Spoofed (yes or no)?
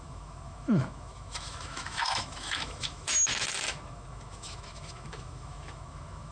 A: yes